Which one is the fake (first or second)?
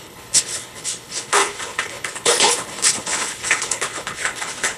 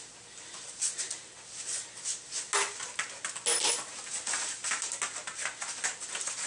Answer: first